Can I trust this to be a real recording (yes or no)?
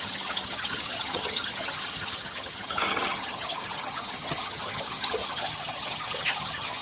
no